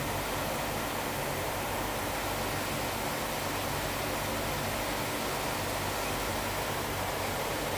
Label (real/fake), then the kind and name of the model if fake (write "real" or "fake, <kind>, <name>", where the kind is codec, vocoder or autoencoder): real